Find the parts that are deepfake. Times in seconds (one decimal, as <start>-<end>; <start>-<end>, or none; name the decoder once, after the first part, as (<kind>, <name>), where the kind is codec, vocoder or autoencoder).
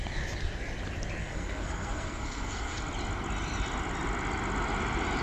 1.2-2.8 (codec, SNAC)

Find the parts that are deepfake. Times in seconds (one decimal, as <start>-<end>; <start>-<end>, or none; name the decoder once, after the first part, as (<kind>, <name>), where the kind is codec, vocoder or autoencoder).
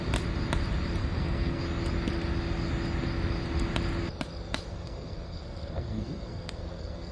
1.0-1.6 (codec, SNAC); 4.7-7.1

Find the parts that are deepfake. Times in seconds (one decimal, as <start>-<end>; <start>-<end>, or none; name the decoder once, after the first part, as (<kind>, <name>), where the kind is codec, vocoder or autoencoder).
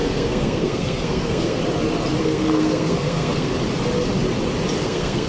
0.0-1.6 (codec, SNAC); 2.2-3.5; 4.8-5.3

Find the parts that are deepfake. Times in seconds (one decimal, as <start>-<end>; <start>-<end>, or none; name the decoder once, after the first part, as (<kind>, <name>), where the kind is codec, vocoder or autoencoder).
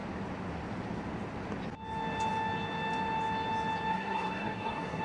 3.9-5.0 (codec, SNAC)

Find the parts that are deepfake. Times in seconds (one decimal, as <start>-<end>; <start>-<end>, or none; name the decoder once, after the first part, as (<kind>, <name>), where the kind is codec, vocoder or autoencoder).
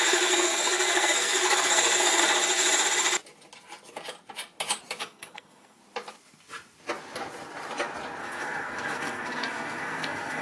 0.0-2.2 (codec, SNAC); 5.0-5.8; 8.2-10.4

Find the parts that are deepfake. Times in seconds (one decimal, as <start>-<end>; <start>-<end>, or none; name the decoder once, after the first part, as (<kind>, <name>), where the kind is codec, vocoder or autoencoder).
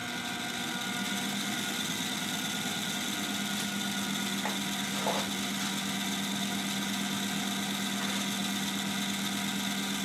none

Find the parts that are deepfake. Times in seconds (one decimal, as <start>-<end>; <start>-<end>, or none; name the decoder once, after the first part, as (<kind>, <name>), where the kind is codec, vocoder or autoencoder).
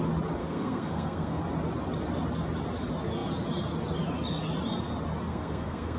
0.4-1.4 (codec, SNAC); 5.3-6.0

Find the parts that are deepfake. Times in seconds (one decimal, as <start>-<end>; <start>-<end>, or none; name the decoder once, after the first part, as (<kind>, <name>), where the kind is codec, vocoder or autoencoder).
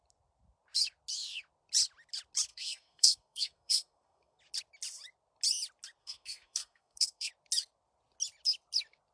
2.5-4.4 (codec, SNAC); 6.0-7.3